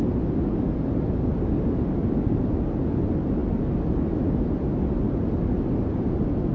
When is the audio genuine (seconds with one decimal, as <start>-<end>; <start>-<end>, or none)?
0.0-2.0; 2.9-6.5